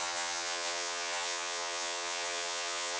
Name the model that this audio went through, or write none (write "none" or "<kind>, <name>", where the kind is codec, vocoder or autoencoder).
vocoder, HiFi-GAN